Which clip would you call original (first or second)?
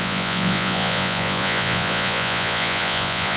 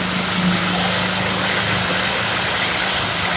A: second